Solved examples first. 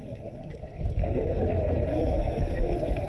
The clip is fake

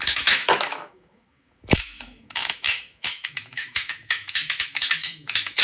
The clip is fake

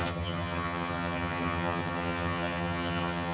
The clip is fake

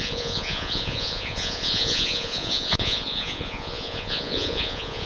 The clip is fake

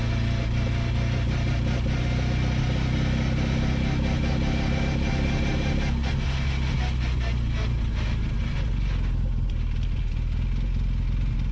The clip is real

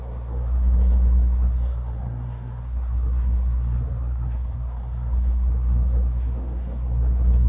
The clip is fake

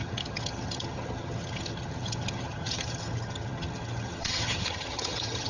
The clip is fake